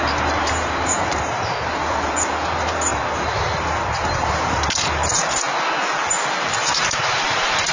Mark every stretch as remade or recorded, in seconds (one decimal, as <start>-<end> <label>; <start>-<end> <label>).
0.0-5.0 remade; 5.0-6.4 recorded; 6.4-7.7 remade

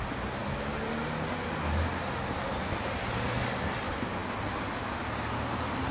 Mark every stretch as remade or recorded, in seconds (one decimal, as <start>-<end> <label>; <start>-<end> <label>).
0.0-5.9 recorded

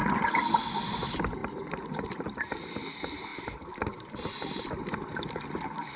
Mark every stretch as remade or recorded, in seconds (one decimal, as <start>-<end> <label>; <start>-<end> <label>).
0.0-1.4 recorded; 1.4-2.4 remade; 2.4-3.3 recorded; 3.3-4.8 remade; 4.8-6.0 recorded

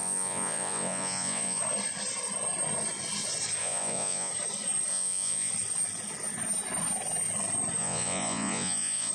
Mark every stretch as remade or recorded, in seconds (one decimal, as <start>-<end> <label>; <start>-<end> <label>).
0.0-1.6 remade; 1.6-3.6 recorded; 3.6-4.3 remade; 4.3-4.9 recorded; 4.9-5.5 remade; 5.5-7.8 recorded; 7.8-9.1 remade

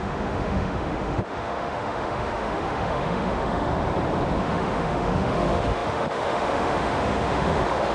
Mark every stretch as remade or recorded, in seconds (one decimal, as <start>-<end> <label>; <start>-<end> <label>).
0.0-3.7 remade; 3.7-4.4 recorded; 4.4-7.9 remade

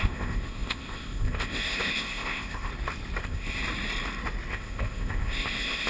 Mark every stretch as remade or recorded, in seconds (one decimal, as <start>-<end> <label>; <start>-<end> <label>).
0.0-2.7 remade; 2.7-3.2 recorded; 3.2-3.6 remade; 3.6-4.5 recorded; 4.5-5.9 remade

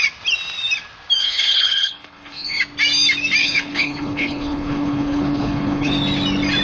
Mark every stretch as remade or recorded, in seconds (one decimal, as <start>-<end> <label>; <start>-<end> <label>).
0.0-1.2 recorded; 1.2-2.6 remade; 2.6-3.4 recorded; 3.4-5.9 remade; 5.9-6.6 recorded